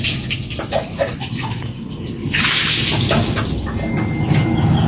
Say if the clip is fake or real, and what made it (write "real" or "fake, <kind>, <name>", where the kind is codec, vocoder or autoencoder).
real